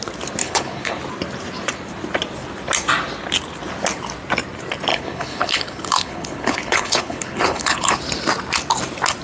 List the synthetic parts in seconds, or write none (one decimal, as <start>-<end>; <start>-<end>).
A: 0.4-1.0; 4.9-8.0